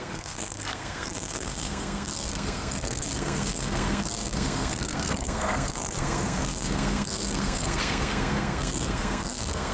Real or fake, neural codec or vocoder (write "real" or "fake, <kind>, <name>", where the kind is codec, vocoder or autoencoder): fake, codec, SNAC